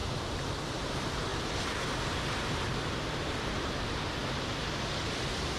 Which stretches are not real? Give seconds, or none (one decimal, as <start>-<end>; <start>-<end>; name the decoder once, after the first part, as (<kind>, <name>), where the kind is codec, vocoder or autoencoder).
0.6-4.2 (vocoder, BigVGAN v2); 4.9-5.6